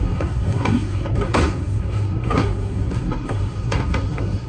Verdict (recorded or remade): remade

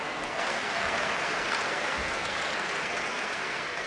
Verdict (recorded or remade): remade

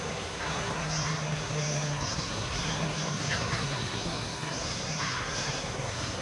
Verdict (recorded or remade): remade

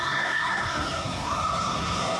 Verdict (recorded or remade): remade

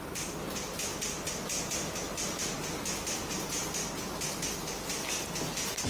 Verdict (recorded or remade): recorded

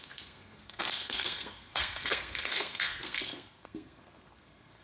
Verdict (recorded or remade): remade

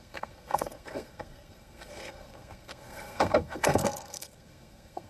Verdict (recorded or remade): remade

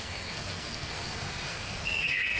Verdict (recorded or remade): remade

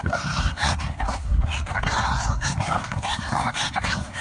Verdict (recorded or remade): remade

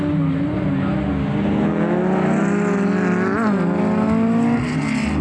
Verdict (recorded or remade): recorded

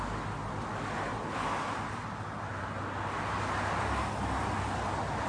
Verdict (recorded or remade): recorded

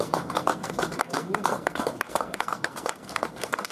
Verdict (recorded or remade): remade